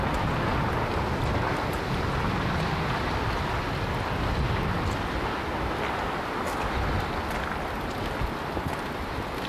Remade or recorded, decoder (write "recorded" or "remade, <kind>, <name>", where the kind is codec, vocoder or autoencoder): recorded